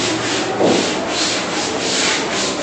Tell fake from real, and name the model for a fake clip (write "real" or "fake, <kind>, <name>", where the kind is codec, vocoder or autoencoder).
real